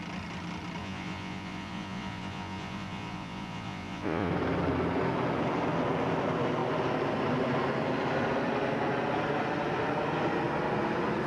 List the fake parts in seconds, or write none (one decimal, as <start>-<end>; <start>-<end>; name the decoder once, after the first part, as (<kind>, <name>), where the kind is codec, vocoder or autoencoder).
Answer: 0.8-4.3 (vocoder, Vocos)